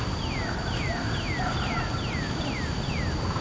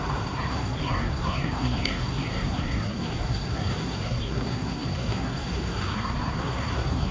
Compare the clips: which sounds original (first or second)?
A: first